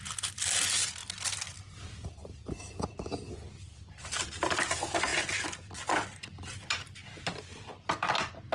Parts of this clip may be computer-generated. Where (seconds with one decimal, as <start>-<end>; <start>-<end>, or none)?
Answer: none